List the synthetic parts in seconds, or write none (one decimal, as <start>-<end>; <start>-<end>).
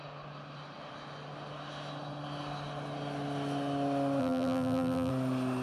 4.2-5.1